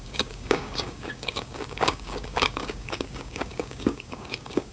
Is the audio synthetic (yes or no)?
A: yes